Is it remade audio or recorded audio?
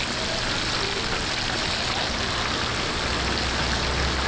recorded